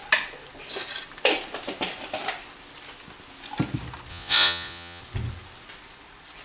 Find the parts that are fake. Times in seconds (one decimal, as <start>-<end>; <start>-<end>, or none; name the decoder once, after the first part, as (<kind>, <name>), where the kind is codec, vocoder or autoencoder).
4.1-5.0 (vocoder, Vocos)